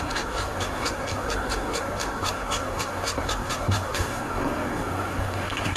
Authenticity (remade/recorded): remade